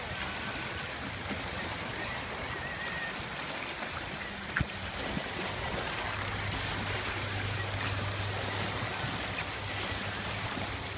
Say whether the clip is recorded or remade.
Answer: recorded